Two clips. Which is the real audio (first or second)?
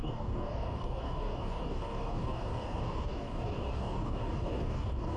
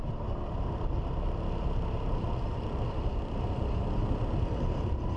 second